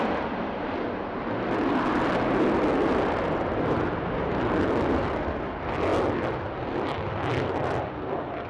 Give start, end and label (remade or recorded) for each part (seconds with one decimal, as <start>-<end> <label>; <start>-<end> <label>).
0.0-8.5 recorded